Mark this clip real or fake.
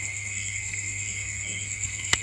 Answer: fake